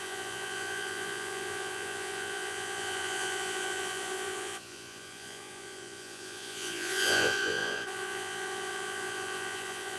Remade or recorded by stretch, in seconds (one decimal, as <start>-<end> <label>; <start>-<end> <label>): 0.0-10.0 remade